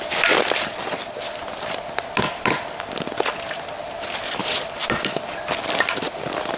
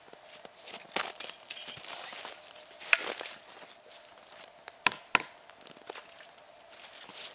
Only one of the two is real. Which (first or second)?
second